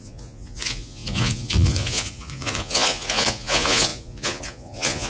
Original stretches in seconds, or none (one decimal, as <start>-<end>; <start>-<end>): none